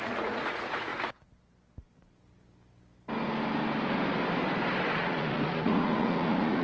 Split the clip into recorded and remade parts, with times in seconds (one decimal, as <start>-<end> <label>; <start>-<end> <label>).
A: 0.0-0.9 remade; 0.9-4.9 recorded; 4.9-6.6 remade